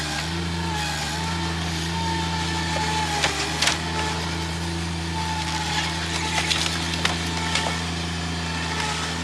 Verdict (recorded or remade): recorded